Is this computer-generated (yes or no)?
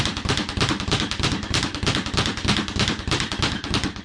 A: no